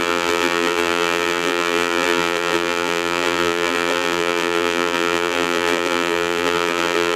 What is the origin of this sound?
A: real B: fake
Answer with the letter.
B